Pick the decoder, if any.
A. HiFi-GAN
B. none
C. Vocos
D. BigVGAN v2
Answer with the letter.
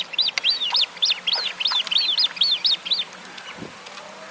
B